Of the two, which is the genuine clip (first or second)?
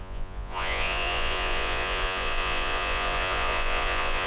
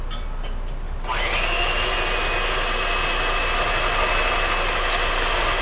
second